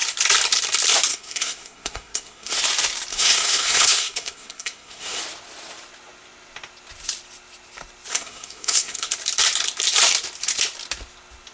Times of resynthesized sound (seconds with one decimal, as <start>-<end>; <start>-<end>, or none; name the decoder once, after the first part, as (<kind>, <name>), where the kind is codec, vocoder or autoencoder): 1.1-2.6 (codec, SNAC); 3.1-5.2; 8.1-9.1